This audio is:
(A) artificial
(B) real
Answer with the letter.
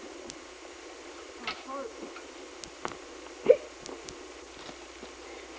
B